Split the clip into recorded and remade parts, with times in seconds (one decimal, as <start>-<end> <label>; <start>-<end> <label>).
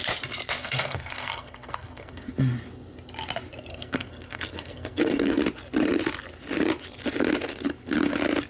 0.0-0.6 recorded; 0.6-2.3 remade; 2.3-3.7 recorded; 3.7-5.4 remade; 5.4-8.5 recorded